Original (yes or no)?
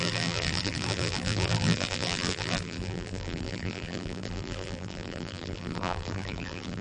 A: no